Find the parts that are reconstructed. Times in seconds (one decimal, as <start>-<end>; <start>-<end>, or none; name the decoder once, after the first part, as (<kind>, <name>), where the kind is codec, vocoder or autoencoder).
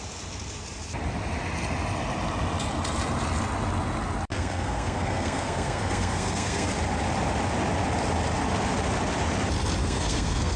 4.3-6.7 (codec, SNAC); 9.8-10.6